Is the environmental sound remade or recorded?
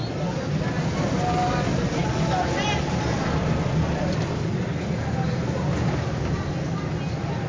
recorded